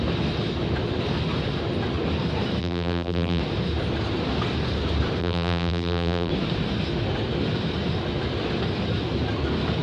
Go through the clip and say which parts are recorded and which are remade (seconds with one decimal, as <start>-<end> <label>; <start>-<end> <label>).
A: 0.0-2.6 recorded; 2.6-3.4 remade; 3.4-5.2 recorded; 5.2-6.3 remade; 6.3-9.8 recorded

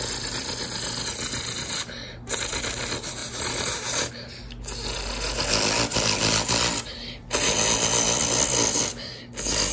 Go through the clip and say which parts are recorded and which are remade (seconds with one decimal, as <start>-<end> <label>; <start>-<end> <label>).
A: 0.0-3.2 recorded; 3.2-4.1 remade; 4.1-9.7 recorded

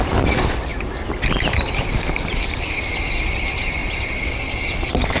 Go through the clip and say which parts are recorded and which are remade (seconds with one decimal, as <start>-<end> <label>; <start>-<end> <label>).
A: 0.0-0.7 recorded; 0.7-2.4 remade; 2.4-3.8 recorded; 3.8-4.6 remade; 4.6-5.2 recorded

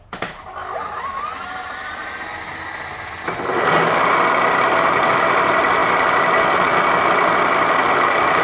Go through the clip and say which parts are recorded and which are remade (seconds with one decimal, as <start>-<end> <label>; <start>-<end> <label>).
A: 0.0-8.4 recorded

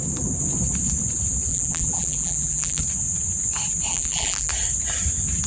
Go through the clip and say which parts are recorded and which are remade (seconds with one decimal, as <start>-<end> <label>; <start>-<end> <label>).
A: 0.0-1.5 recorded; 1.5-2.8 remade; 2.8-3.9 recorded; 3.9-4.5 remade; 4.5-5.5 recorded

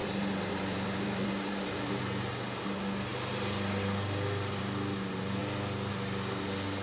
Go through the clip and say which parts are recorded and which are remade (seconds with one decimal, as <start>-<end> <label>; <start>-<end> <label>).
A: 0.0-2.0 remade; 2.0-6.8 recorded

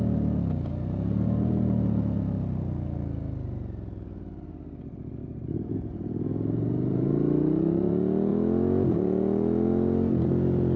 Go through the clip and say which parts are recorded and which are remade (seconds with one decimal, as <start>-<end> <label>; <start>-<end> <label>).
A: 0.0-5.2 recorded; 5.2-7.9 remade; 7.9-10.8 recorded